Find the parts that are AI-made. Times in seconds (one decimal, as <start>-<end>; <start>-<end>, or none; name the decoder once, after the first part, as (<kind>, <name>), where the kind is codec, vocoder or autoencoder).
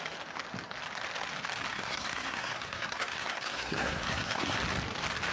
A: 1.7-4.6 (codec, SNAC)